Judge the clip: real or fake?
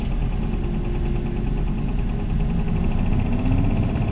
real